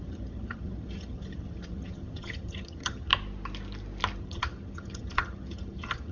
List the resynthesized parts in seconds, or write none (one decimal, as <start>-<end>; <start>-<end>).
0.0-3.1; 4.2-6.1